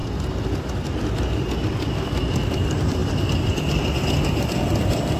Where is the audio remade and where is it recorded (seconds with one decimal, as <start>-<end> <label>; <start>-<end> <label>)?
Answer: 0.0-5.2 recorded